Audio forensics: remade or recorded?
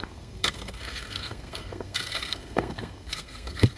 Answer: remade